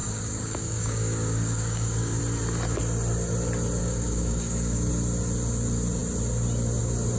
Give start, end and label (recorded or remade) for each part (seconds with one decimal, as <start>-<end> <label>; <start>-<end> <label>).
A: 0.0-2.2 remade; 2.2-3.8 recorded; 3.8-4.9 remade; 4.9-7.2 recorded